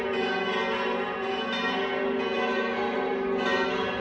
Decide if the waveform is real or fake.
real